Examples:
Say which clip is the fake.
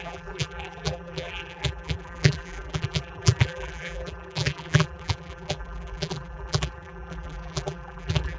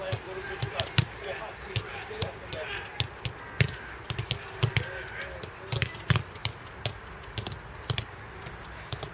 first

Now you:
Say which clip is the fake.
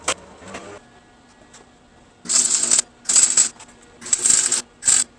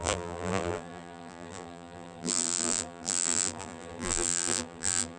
second